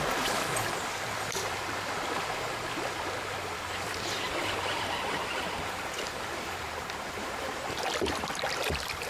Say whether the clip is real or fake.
fake